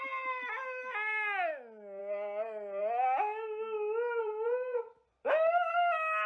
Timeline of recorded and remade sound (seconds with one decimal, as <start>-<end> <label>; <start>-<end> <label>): 0.0-2.0 recorded; 2.0-2.8 remade; 2.8-4.2 recorded; 4.2-5.3 remade; 5.3-6.3 recorded

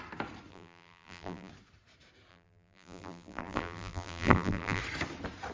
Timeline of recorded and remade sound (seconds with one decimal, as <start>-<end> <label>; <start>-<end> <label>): 0.0-0.5 recorded; 0.5-1.5 remade; 1.5-2.3 recorded; 2.3-4.8 remade; 4.8-5.5 recorded

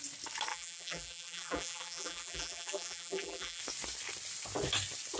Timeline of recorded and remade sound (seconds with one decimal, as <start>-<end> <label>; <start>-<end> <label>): 0.0-0.5 recorded; 0.5-3.6 remade; 3.6-5.2 recorded

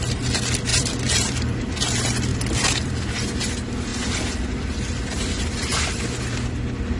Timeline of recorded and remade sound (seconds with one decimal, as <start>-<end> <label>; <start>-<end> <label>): 0.0-0.7 recorded; 0.7-1.7 remade; 1.7-2.3 recorded; 2.3-3.1 remade; 3.1-3.9 recorded; 3.9-6.0 remade; 6.0-7.0 recorded

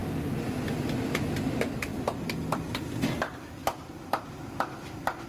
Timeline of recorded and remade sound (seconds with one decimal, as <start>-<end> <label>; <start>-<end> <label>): 0.0-1.9 recorded; 1.9-5.3 remade

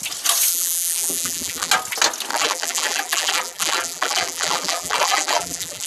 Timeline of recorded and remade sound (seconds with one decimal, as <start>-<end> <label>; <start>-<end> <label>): 0.0-0.5 recorded; 0.5-1.7 remade; 1.7-2.3 recorded; 2.3-5.9 remade

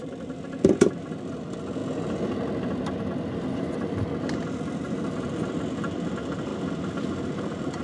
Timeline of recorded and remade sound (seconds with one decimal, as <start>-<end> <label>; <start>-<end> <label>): 0.0-6.5 remade; 6.5-7.8 recorded

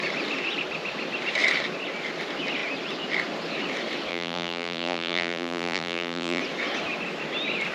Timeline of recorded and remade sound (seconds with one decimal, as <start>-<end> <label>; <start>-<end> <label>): 0.0-4.1 recorded; 4.1-6.4 remade; 6.4-7.7 recorded